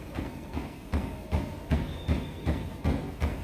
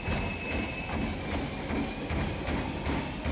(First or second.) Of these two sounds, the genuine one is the second